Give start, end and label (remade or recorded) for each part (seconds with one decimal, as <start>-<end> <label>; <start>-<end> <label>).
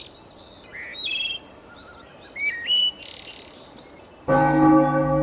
0.0-5.2 recorded